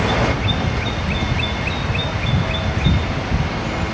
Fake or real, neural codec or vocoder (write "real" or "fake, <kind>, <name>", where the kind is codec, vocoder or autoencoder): real